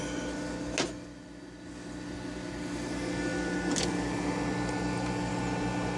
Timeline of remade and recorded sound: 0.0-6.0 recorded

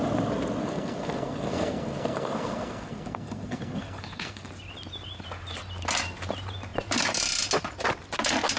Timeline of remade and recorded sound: 0.0-0.6 recorded; 0.6-4.5 remade; 4.5-8.6 recorded

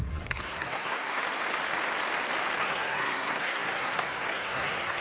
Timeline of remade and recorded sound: 0.0-1.2 remade; 1.2-2.6 recorded; 2.6-5.0 remade

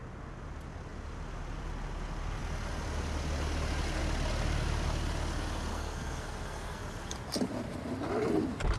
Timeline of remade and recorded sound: 0.0-5.7 recorded; 5.7-6.8 remade; 6.8-8.8 recorded